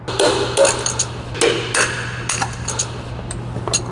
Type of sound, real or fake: real